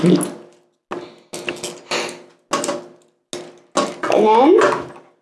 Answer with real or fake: real